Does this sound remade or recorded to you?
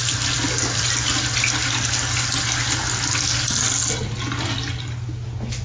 recorded